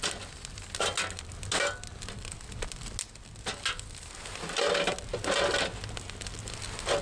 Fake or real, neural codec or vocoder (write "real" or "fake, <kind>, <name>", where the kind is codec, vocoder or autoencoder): real